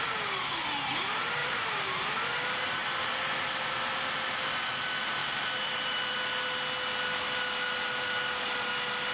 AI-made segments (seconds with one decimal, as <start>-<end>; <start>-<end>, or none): 1.4-2.0; 5.2-6.2